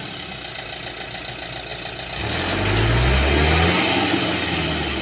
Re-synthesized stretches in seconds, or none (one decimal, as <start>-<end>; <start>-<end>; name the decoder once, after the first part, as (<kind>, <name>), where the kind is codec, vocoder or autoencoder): none